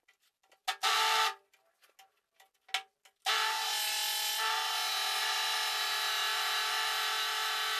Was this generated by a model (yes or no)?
no